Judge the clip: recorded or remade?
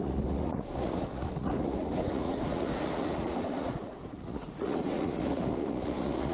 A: remade